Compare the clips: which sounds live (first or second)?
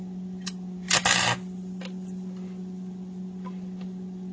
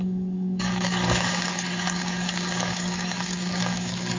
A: first